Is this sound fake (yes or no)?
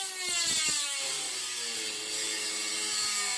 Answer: no